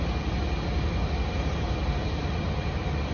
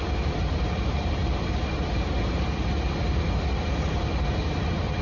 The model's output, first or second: second